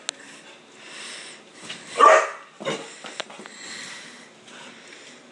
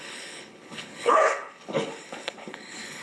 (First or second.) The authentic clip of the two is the first